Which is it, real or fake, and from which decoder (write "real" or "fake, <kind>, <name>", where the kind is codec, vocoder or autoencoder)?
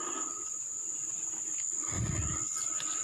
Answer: real